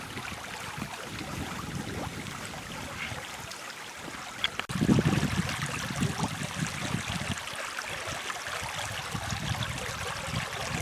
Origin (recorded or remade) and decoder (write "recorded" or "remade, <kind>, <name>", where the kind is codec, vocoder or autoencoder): recorded